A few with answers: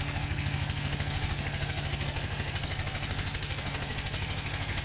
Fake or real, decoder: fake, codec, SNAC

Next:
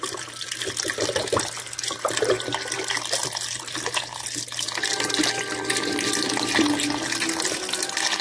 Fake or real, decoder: real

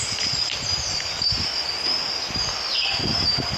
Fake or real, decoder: real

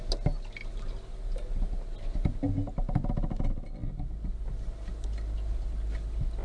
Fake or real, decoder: real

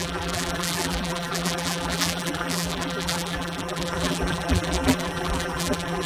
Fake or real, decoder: fake, vocoder, BigVGAN v2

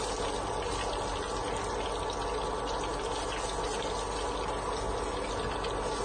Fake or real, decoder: real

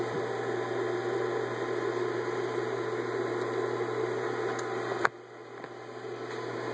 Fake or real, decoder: real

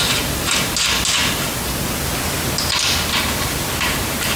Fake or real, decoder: real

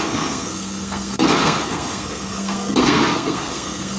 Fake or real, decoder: fake, codec, SNAC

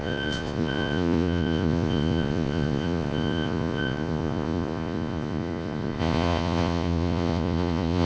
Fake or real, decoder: fake, vocoder, Vocos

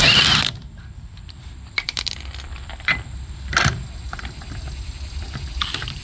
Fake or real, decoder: fake, vocoder, BigVGAN v2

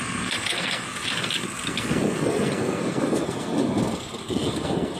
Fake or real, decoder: fake, codec, SNAC